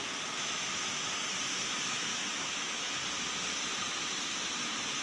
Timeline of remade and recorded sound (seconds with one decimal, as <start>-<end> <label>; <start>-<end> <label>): 0.0-2.1 recorded; 2.1-2.9 remade; 2.9-5.0 recorded